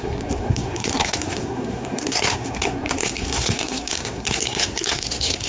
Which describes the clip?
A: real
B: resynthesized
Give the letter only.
B